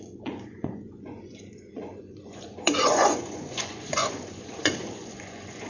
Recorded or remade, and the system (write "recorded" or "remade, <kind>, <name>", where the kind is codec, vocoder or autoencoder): remade, vocoder, Vocos